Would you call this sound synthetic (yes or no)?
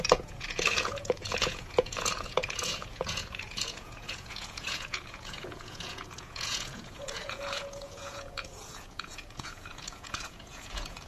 yes